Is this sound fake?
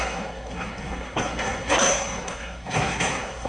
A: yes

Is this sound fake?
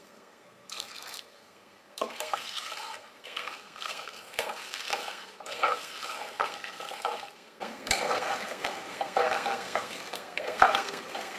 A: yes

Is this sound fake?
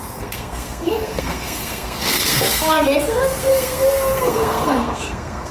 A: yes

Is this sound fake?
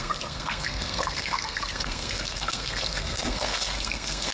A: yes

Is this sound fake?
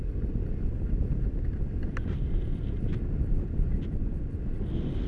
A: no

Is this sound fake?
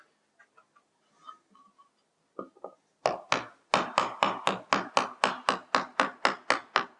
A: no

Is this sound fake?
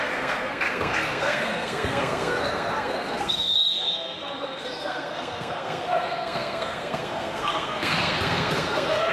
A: yes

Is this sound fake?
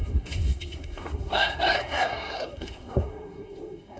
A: yes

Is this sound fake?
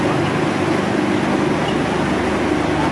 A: no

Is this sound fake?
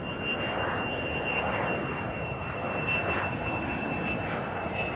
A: no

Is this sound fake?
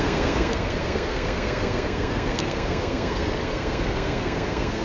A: yes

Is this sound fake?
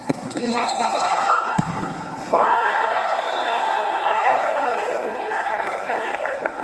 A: yes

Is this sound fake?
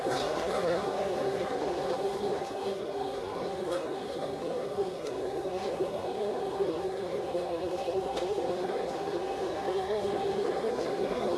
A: yes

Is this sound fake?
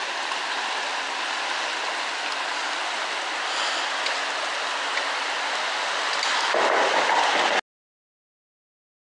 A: no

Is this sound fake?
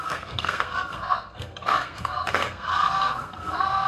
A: yes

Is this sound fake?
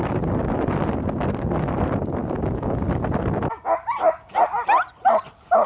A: no